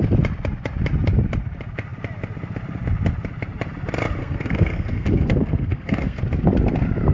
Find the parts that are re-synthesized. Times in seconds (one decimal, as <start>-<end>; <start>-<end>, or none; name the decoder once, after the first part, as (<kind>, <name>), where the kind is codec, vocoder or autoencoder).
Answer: 4.2-6.2 (codec, SNAC)